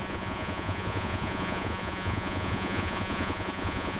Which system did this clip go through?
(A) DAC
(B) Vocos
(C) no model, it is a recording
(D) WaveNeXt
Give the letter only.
B